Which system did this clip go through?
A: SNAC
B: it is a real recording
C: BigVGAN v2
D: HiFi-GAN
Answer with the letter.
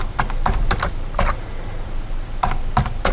B